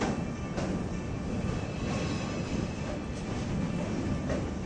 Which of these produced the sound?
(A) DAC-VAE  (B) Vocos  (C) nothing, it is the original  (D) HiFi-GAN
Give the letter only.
C